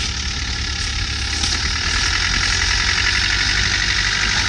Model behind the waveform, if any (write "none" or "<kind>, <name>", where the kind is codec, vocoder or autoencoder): none